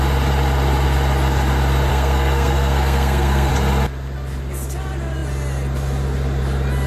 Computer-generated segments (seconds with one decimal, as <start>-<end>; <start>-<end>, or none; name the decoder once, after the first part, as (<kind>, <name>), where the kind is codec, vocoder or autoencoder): 1.9-3.5 (codec, SNAC)